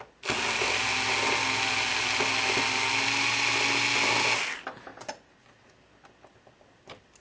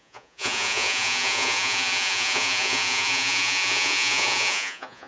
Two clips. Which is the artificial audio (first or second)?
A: second